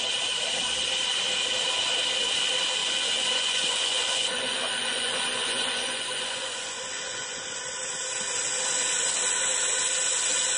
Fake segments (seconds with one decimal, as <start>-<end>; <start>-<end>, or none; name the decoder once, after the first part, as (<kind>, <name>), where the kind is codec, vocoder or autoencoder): 2.8-7.7 (vocoder, Vocos)